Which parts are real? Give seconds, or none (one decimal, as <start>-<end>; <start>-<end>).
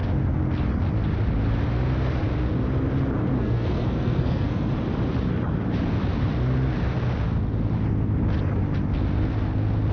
0.0-3.3; 4.7-9.9